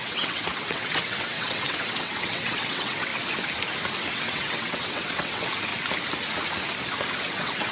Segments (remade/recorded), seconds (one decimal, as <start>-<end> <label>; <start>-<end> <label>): 0.0-3.1 remade; 3.1-4.0 recorded; 4.0-5.7 remade; 5.7-7.2 recorded; 7.2-7.7 remade